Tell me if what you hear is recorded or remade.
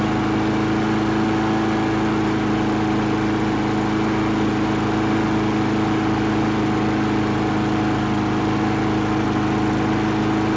recorded